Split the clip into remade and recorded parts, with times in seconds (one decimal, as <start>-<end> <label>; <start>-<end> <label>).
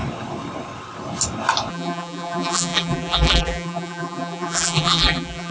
0.0-1.7 recorded; 1.7-5.5 remade